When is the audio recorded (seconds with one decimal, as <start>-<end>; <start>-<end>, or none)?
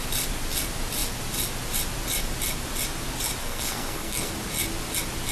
0.0-3.4; 4.3-5.3